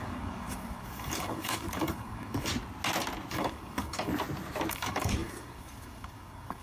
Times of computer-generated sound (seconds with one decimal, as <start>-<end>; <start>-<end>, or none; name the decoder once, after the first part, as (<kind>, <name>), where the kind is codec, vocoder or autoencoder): 0.0-2.5 (codec, DAC); 3.3-4.1; 4.7-6.6